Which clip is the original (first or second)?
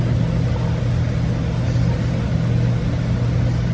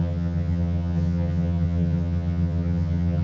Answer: first